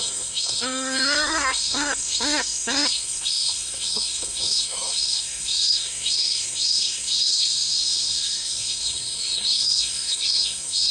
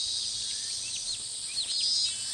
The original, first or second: second